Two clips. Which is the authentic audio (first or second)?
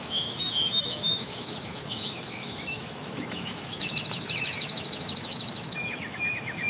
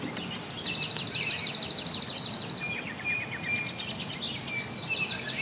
second